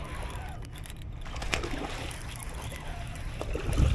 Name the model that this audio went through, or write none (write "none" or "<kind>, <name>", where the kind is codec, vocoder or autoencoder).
none